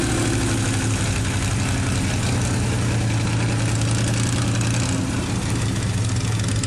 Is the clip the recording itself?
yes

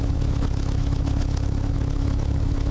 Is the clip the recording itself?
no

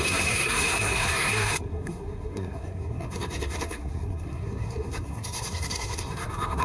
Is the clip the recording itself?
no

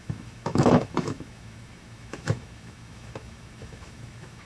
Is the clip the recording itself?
no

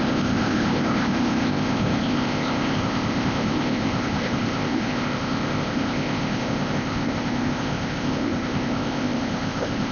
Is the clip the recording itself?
no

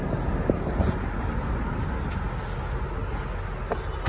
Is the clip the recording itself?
yes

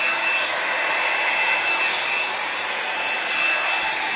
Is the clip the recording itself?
yes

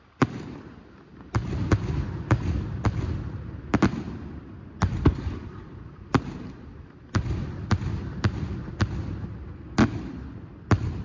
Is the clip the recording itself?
yes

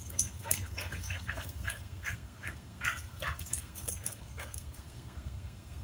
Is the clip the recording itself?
no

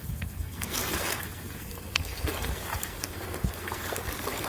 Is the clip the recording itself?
no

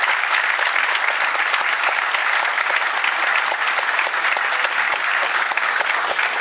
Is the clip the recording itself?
yes